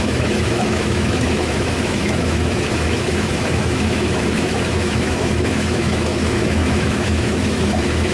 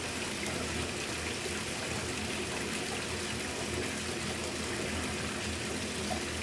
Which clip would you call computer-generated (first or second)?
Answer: first